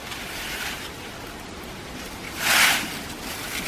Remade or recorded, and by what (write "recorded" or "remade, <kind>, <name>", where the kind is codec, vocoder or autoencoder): recorded